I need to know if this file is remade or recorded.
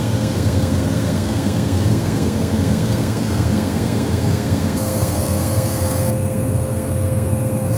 remade